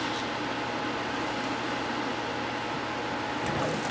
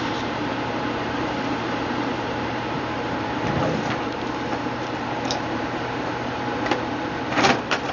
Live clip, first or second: first